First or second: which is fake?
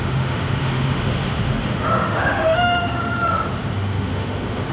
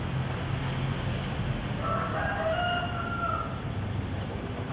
first